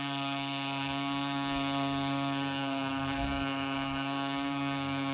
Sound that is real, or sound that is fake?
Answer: fake